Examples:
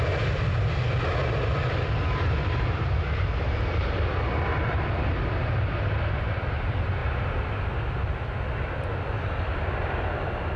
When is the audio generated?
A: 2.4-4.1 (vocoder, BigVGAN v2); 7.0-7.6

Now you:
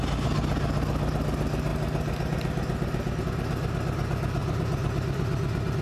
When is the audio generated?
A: 4.4-5.8 (vocoder, BigVGAN v2)

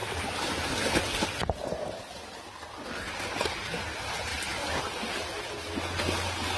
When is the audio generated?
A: 4.3-5.4 (vocoder, BigVGAN v2)

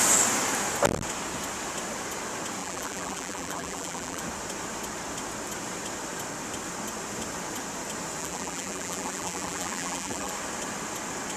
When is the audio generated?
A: 2.6-4.2 (vocoder, BigVGAN v2); 8.2-10.3